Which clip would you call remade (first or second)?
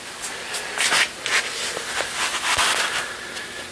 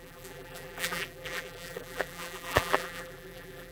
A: second